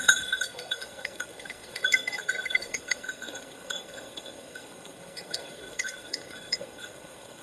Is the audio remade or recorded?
remade